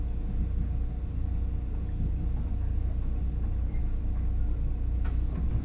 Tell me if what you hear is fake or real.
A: real